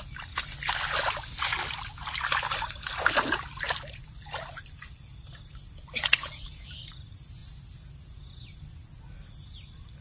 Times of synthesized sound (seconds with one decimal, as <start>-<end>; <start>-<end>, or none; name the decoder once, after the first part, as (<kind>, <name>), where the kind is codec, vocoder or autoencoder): none